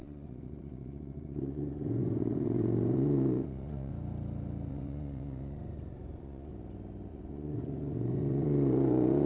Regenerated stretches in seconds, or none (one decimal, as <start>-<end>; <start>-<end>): 0.0-3.9; 4.7-6.5; 7.1-9.3